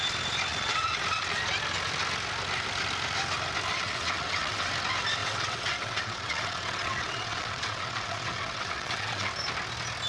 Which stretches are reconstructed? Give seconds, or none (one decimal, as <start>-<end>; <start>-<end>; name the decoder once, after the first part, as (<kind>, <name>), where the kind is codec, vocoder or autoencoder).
0.5-1.4 (vocoder, WaveNeXt); 3.7-4.7; 5.2-9.3